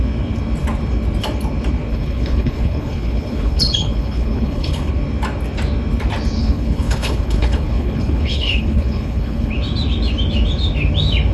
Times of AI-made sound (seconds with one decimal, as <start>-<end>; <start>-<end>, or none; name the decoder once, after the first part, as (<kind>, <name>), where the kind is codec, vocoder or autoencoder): 1.9-4.9 (codec, HILCodec); 6.4-9.5

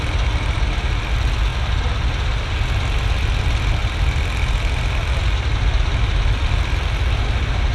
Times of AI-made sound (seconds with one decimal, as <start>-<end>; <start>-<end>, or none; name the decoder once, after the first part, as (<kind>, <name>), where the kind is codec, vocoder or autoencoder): none

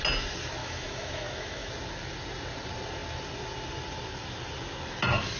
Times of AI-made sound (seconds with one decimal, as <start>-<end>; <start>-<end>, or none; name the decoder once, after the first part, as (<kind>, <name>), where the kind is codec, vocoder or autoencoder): 0.6-1.7 (autoencoder, DAC-VAE)